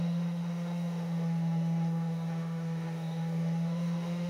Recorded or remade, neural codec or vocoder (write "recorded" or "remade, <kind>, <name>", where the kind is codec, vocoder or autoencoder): remade, autoencoder, DAC-VAE